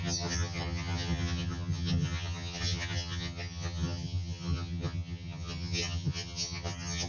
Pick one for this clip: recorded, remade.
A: remade